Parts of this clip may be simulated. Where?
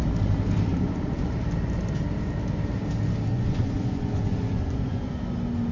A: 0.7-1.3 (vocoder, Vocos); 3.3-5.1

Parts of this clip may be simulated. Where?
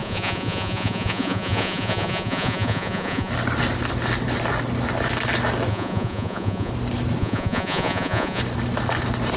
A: 0.0-3.3 (vocoder, Vocos); 5.7-6.7; 7.2-8.4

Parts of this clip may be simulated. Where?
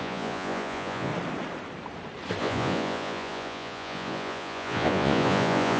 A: 0.0-1.1 (vocoder, Vocos); 2.4-5.8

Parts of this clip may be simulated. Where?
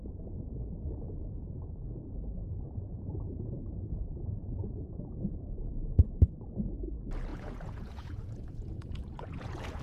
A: 1.2-1.8 (vocoder, Vocos); 2.4-5.4; 7.3-9.8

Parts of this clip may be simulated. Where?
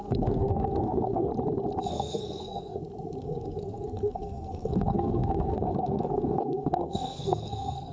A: 0.0-1.3 (codec, SNAC); 1.9-2.7; 3.2-7.9